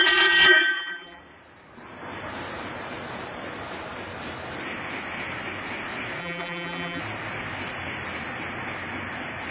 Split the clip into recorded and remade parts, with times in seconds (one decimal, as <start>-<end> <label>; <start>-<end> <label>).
0.0-1.2 remade; 1.2-6.2 recorded; 6.2-7.0 remade; 7.0-9.5 recorded